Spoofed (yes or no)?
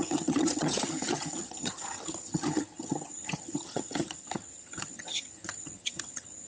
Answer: yes